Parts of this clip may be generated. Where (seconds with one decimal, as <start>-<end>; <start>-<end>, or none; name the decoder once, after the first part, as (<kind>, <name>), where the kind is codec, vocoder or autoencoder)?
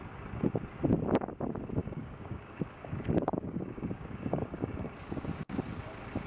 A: 1.8-5.6 (codec, DAC)